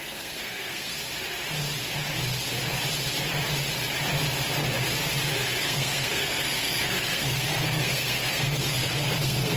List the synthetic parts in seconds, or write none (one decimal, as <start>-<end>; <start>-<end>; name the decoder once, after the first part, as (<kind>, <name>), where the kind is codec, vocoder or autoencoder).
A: 0.0-0.9 (codec, SNAC); 5.6-9.6